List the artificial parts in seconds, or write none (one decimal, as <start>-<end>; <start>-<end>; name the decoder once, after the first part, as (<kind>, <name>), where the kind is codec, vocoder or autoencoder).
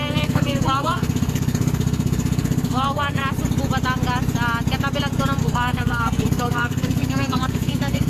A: 0.0-3.2 (codec, SNAC); 5.4-8.1